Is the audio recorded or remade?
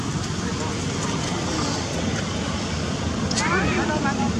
recorded